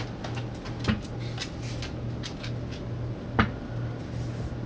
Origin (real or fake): real